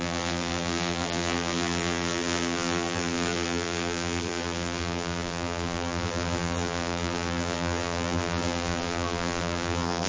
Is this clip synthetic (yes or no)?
yes